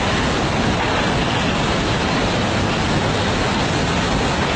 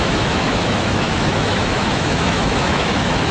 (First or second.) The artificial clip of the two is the second